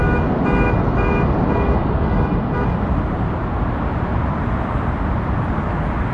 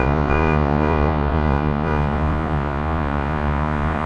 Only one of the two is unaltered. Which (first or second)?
first